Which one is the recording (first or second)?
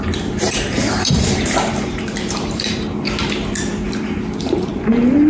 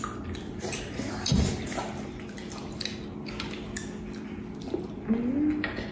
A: second